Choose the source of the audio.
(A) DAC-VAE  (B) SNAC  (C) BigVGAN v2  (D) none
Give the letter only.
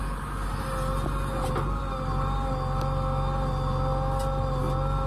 D